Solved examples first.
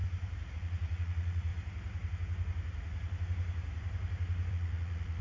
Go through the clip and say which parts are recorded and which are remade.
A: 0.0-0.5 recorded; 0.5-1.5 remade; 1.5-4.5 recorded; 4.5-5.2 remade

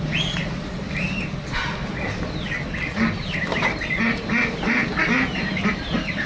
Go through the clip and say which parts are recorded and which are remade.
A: 0.0-6.3 recorded

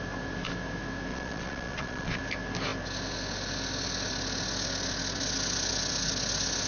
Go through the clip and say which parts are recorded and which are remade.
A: 0.0-1.1 recorded; 1.1-2.2 remade; 2.2-6.7 recorded

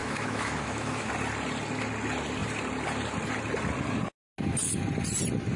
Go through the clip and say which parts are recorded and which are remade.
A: 0.0-1.1 remade; 1.1-5.6 recorded

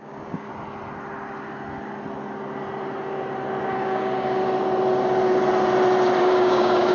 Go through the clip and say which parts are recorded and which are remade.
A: 0.0-0.5 remade; 0.5-3.7 recorded; 3.7-4.4 remade; 4.4-6.2 recorded; 6.2-6.9 remade

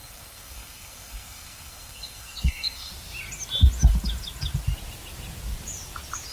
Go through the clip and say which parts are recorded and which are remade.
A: 0.0-2.9 remade; 2.9-6.3 recorded